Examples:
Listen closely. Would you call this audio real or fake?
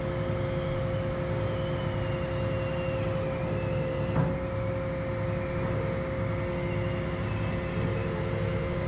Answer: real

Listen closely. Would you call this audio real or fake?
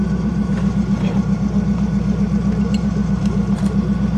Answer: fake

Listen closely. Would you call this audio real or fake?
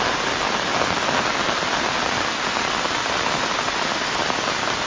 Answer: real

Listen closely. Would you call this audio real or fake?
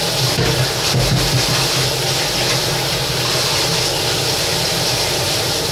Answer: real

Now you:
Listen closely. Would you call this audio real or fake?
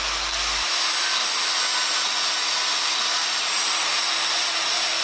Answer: real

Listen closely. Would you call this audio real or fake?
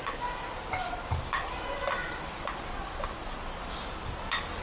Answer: real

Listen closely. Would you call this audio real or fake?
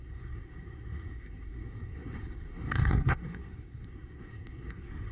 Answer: fake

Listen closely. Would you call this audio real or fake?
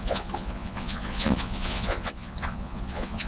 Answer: fake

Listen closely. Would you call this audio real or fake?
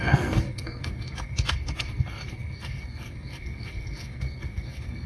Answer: fake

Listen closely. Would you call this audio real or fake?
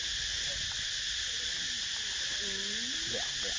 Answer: real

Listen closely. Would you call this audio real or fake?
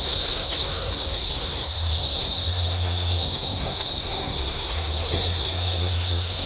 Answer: fake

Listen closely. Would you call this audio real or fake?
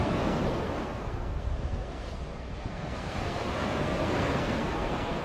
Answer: fake